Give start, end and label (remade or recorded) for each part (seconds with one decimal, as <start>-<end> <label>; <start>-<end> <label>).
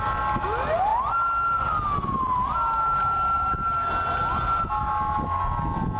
0.0-6.0 recorded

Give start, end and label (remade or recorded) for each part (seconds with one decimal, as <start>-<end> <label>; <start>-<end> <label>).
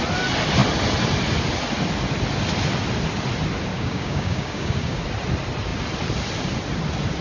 0.0-3.7 recorded; 3.7-5.0 remade; 5.0-7.2 recorded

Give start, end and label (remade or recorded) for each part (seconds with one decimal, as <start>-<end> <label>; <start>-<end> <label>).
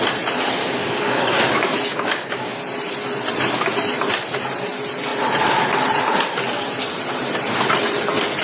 0.0-0.6 recorded; 0.6-1.5 remade; 1.5-1.9 recorded; 1.9-2.6 remade; 2.6-8.4 recorded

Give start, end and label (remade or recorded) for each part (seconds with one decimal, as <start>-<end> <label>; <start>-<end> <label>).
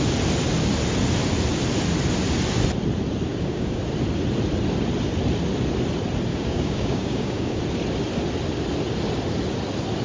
0.0-3.3 recorded; 3.3-3.8 remade; 3.8-6.3 recorded; 6.3-7.6 remade; 7.6-10.0 recorded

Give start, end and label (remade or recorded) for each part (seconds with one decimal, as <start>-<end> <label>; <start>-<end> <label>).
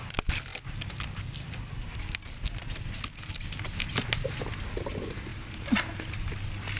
0.0-6.8 recorded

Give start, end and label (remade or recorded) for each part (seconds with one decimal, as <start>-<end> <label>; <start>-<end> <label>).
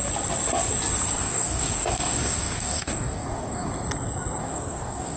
0.0-1.2 recorded; 1.2-3.7 remade; 3.7-4.4 recorded; 4.4-5.2 remade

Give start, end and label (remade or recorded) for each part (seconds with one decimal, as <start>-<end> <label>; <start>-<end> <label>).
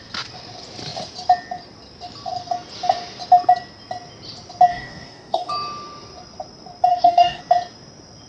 0.0-4.7 recorded; 4.7-5.5 remade; 5.5-6.9 recorded; 6.9-7.4 remade; 7.4-8.3 recorded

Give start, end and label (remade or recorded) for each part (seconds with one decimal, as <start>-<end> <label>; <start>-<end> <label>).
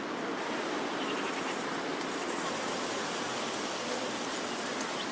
0.0-5.1 recorded